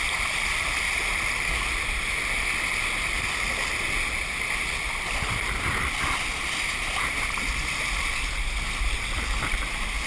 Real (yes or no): yes